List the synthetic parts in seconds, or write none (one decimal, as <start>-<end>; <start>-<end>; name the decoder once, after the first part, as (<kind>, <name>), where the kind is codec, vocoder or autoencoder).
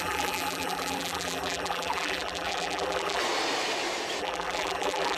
0.0-3.2 (vocoder, BigVGAN v2); 4.2-5.2